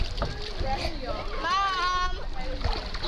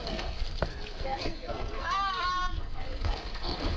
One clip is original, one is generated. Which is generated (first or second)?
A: second